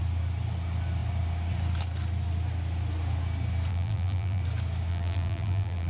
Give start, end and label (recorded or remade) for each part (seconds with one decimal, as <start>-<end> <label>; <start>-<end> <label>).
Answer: 0.0-3.7 recorded; 3.7-4.4 remade; 4.4-4.9 recorded; 4.9-5.9 remade